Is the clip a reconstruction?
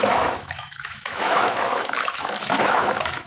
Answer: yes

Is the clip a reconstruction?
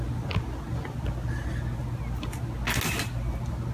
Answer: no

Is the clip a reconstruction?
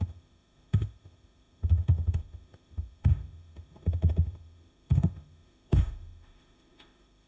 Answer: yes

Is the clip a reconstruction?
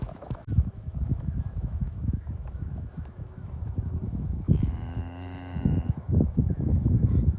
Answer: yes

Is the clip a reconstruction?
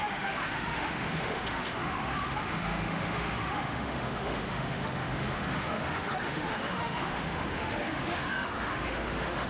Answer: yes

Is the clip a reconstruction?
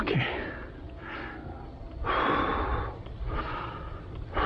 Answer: no